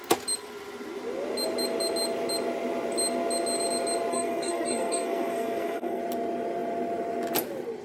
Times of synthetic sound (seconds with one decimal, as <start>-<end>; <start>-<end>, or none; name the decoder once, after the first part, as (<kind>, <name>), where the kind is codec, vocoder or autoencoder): 4.1-6.0 (codec, SNAC)